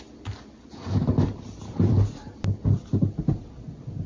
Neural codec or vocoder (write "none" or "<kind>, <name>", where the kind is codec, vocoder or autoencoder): none